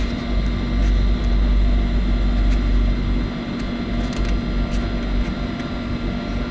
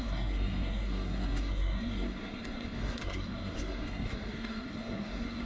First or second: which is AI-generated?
second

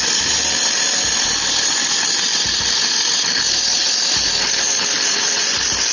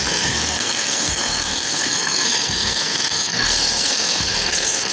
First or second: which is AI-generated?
second